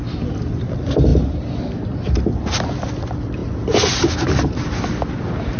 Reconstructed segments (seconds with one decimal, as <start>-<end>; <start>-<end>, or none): none